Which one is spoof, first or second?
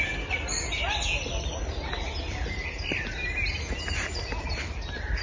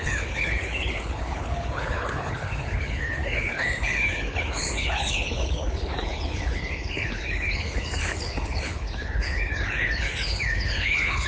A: second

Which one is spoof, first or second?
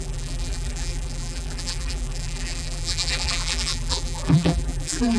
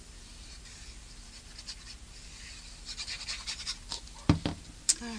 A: first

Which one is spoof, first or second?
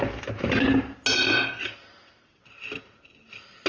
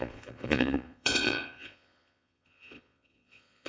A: second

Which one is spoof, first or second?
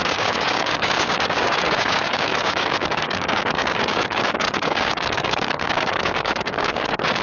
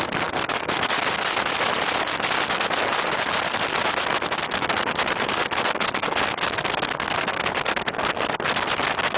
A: first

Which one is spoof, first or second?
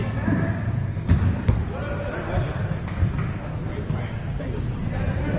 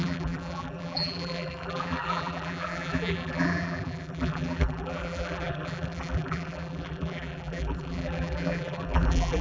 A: second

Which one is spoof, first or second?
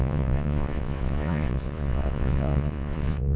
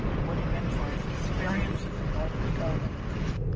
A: first